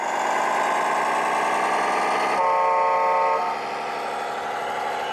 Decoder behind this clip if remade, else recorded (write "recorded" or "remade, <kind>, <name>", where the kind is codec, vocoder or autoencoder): recorded